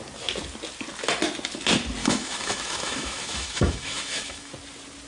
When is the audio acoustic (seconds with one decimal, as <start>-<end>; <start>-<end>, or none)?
0.0-2.0; 4.5-5.1